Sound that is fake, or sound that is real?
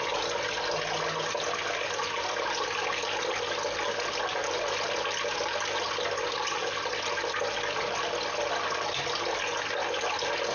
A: real